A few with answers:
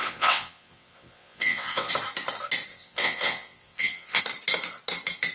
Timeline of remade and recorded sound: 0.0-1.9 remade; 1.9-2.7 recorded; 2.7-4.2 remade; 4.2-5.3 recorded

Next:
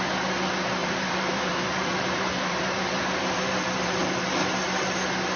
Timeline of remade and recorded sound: 0.0-0.8 recorded; 0.8-4.0 remade; 4.0-5.4 recorded

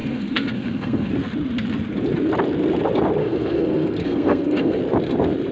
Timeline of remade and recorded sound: 0.0-1.1 remade; 1.1-3.2 recorded; 3.2-4.8 remade; 4.8-5.5 recorded

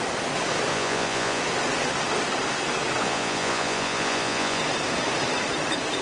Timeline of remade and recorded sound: 0.0-0.7 recorded; 0.7-1.4 remade; 1.4-3.0 recorded; 3.0-4.6 remade; 4.6-6.0 recorded